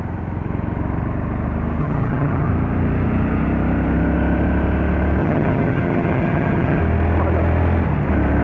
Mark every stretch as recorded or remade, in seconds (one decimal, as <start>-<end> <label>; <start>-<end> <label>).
0.0-1.8 recorded; 1.8-2.5 remade; 2.5-5.2 recorded; 5.2-6.8 remade; 6.8-8.4 recorded